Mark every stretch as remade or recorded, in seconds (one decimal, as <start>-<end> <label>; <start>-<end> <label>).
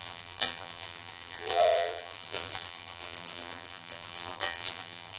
0.0-5.2 remade